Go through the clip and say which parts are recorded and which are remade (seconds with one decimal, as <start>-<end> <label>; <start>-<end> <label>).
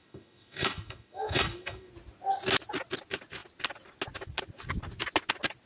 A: 0.0-1.9 remade; 1.9-5.7 recorded